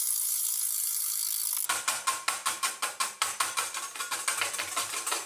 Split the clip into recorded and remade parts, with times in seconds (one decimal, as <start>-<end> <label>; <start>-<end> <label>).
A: 0.0-1.2 remade; 1.2-4.4 recorded; 4.4-5.3 remade